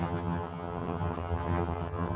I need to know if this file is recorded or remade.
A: remade